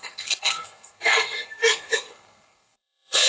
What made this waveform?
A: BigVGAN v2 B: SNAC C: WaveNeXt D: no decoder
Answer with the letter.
B